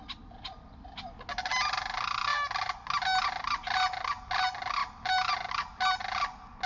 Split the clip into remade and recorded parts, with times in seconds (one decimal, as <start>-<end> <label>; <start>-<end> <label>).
0.0-6.7 recorded